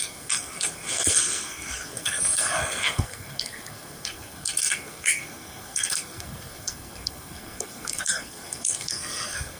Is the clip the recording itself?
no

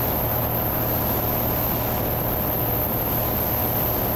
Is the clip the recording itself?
yes